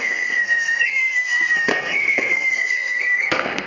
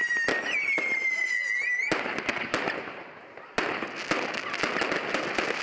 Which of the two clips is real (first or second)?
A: second